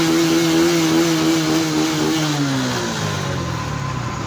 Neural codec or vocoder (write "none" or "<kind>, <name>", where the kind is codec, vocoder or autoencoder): none